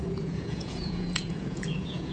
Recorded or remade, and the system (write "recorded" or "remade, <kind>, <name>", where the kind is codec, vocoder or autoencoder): remade, vocoder, Vocos